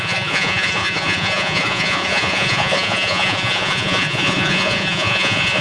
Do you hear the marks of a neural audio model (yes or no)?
yes